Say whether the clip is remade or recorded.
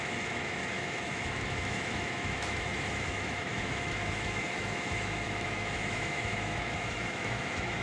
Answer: remade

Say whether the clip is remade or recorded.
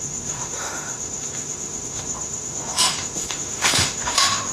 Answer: remade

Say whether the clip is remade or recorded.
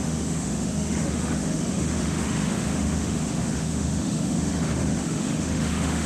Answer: remade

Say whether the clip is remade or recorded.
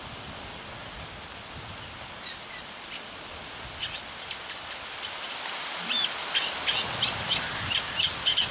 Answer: recorded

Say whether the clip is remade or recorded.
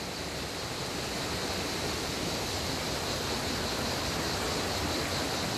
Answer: recorded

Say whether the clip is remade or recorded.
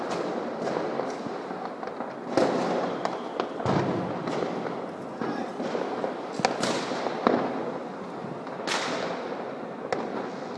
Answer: recorded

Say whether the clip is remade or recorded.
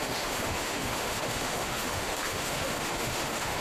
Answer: remade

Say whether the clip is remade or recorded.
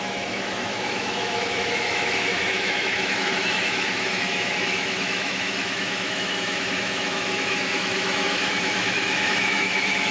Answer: remade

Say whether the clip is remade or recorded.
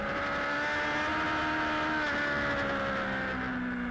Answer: recorded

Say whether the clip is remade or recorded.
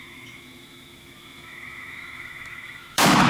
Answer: remade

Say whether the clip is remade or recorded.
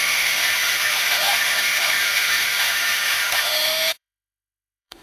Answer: remade